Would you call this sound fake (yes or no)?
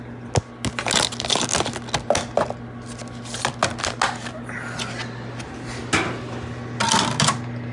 no